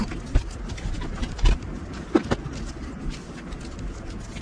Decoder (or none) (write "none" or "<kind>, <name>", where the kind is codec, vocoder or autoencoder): none